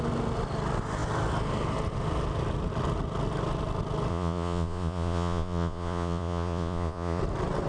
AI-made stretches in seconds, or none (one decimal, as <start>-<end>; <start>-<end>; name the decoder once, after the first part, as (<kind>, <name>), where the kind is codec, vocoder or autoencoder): 4.1-7.2 (vocoder, Vocos)